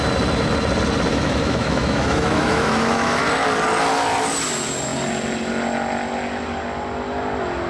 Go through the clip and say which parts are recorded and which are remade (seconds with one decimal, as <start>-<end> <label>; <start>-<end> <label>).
0.0-1.1 recorded; 1.1-3.2 remade; 3.2-7.7 recorded